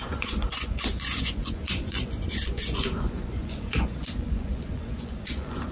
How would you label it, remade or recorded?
remade